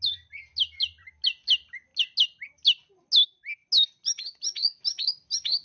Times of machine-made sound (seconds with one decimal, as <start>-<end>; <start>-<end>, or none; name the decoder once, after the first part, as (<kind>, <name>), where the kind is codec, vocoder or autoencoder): none